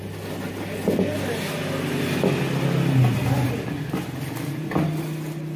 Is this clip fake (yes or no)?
no